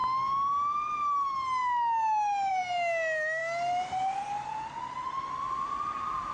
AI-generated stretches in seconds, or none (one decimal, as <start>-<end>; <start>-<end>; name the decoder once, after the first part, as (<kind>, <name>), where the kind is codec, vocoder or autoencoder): none